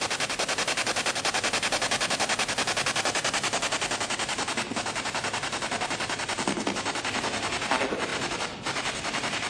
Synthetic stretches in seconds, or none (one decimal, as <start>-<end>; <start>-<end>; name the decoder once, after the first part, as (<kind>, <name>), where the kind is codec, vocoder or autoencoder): none